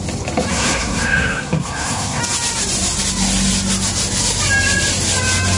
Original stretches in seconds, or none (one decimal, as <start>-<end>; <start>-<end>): 0.0-0.5; 2.2-5.6